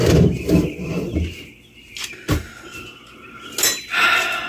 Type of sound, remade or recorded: recorded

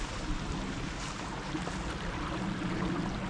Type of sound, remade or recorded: recorded